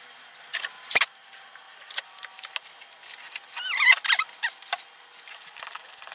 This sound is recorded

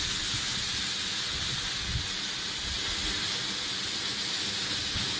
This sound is recorded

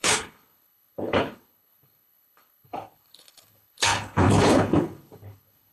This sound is remade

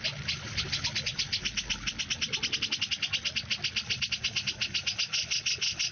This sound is recorded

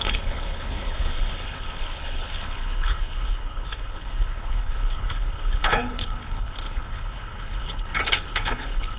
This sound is remade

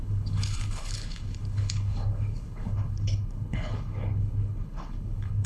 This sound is remade